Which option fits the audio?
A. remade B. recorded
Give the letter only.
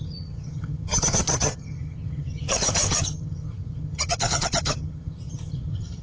A